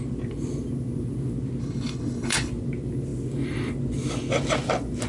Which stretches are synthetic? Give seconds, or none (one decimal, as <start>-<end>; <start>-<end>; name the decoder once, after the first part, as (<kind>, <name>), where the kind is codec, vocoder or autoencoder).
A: 1.6-2.5 (codec, HILCodec)